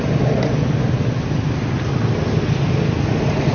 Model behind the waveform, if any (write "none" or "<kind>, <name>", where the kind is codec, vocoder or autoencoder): none